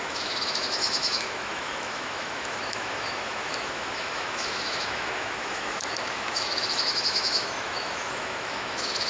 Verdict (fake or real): fake